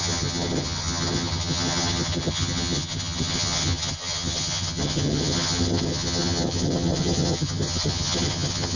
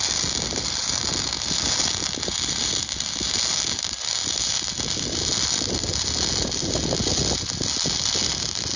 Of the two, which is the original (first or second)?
second